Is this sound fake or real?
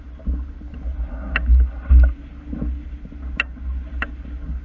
real